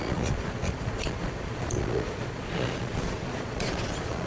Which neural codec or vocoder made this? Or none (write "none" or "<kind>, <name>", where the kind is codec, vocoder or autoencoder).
vocoder, Vocos